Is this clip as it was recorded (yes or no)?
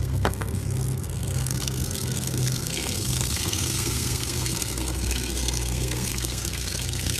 no